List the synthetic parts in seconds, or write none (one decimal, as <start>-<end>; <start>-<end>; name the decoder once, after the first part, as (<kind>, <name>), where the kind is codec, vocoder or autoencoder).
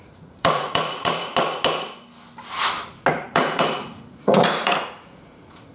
0.0-1.3 (vocoder, Vocos); 3.1-5.7